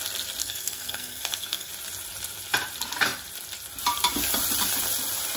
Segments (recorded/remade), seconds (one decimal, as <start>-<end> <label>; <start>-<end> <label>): 0.0-0.4 recorded; 0.4-1.7 remade; 1.7-5.4 recorded